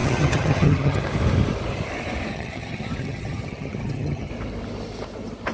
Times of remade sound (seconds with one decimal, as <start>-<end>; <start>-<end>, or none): 0.0-1.0; 2.3-4.3